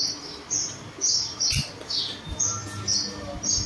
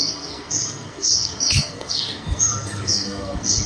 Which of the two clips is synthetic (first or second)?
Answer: second